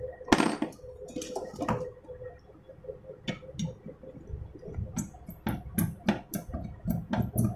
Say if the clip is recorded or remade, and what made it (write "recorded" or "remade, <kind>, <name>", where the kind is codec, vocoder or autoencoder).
recorded